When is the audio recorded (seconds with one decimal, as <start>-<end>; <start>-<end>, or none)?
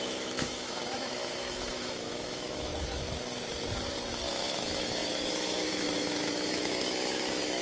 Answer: 2.7-4.3